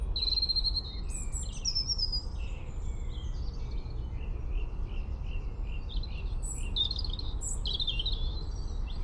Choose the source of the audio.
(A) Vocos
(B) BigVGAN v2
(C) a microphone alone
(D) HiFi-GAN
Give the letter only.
C